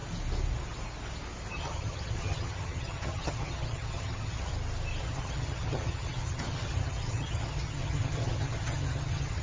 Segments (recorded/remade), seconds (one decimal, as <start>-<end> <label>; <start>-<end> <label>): 0.0-1.5 recorded; 1.5-4.5 remade; 4.5-5.0 recorded; 5.0-9.4 remade